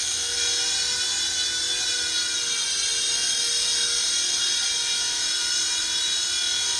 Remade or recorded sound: recorded